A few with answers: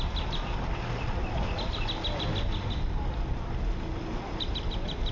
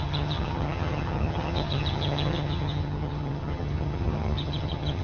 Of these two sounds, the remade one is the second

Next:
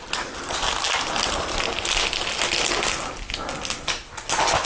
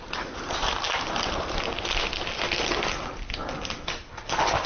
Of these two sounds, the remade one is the second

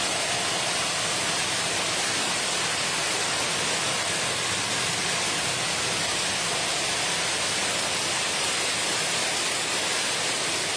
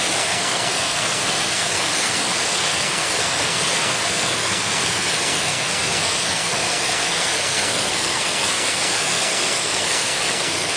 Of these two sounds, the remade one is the second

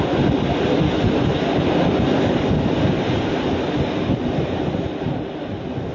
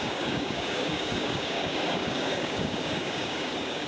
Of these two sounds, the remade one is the second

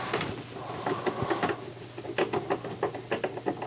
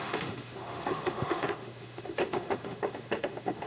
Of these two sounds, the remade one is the second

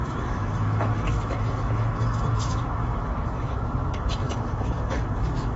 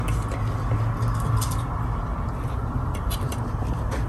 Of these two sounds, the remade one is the first